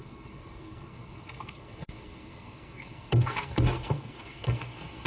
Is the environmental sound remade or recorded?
remade